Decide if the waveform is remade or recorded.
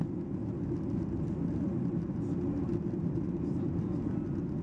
recorded